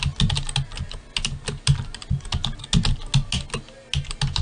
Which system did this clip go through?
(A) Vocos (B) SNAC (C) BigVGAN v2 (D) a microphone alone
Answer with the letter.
D